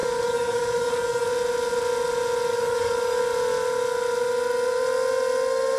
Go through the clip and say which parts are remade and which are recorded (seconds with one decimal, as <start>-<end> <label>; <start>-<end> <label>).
0.0-1.3 remade; 1.3-2.5 recorded; 2.5-3.2 remade; 3.2-5.8 recorded